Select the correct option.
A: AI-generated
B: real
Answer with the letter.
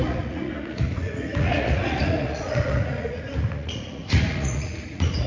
A